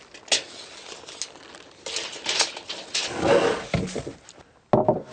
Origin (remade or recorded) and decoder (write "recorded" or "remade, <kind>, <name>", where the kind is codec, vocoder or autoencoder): recorded